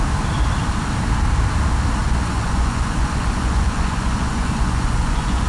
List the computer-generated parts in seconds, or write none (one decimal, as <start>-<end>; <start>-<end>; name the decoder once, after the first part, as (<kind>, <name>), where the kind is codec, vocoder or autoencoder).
2.0-5.5 (vocoder, Vocos)